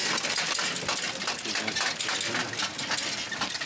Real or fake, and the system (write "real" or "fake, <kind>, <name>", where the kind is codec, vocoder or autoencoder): real